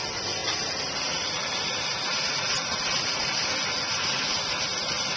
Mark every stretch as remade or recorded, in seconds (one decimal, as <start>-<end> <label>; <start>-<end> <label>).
0.0-5.2 recorded